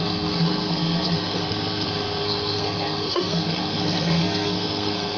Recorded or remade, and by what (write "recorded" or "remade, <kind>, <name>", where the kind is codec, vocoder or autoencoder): remade, codec, SNAC